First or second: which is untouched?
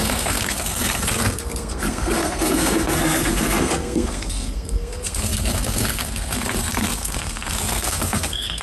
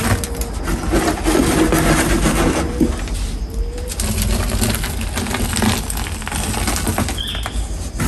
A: second